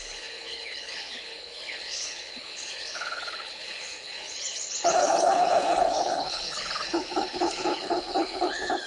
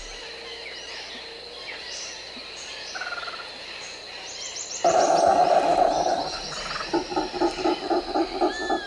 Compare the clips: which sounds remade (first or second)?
first